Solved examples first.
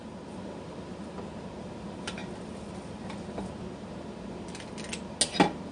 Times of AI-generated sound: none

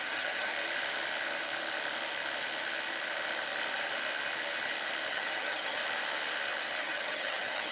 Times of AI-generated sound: 0.0-0.5 (vocoder, HiFi-GAN); 5.1-5.8; 6.8-7.7

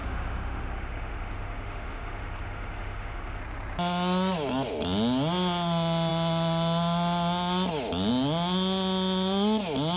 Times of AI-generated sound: 0.0-3.4 (autoencoder, DAC-VAE)

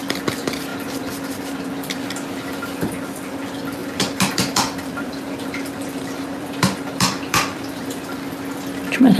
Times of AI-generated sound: 0.7-1.4 (vocoder, BigVGAN v2); 3.8-8.0